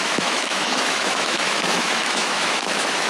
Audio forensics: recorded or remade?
remade